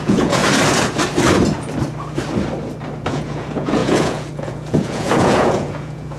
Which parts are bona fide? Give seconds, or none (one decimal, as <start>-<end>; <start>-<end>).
0.4-3.1